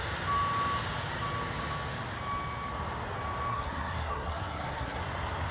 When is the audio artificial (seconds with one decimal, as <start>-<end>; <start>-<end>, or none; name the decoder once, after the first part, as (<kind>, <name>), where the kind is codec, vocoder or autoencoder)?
3.5-5.0 (codec, SNAC)